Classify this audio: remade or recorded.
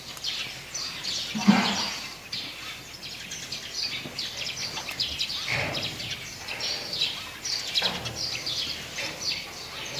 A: recorded